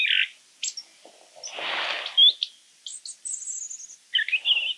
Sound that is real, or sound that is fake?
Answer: real